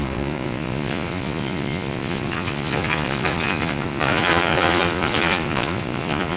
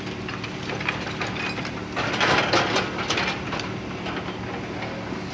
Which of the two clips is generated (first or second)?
first